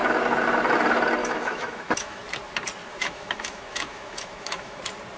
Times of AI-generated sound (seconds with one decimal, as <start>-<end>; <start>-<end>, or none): 1.2-2.2; 2.9-4.8